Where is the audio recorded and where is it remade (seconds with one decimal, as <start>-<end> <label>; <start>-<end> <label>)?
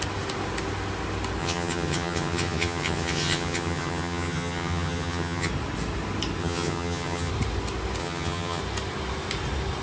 0.0-1.4 recorded; 1.4-5.5 remade; 5.5-6.4 recorded; 6.4-7.3 remade; 7.3-8.0 recorded; 8.0-8.6 remade; 8.6-9.8 recorded